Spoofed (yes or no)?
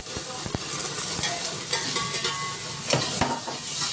no